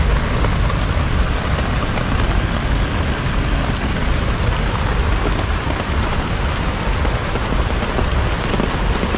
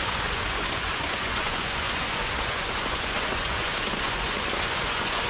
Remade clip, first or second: second